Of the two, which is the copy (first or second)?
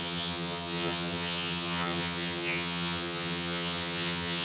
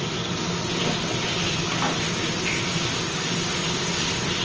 first